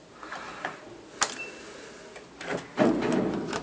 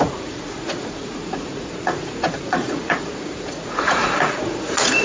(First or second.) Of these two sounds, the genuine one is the first